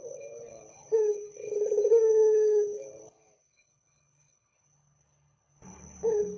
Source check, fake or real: fake